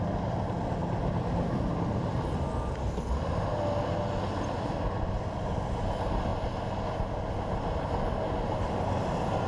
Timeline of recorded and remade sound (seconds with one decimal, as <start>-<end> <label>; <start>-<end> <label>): 0.0-9.5 recorded